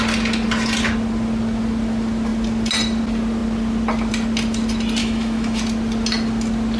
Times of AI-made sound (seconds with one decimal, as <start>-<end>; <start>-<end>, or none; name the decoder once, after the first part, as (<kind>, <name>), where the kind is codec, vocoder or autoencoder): 5.0-5.6 (autoencoder, DAC-VAE)